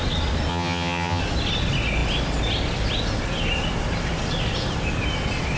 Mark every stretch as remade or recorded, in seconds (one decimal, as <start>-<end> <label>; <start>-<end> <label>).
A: 0.0-0.5 recorded; 0.5-1.2 remade; 1.2-5.6 recorded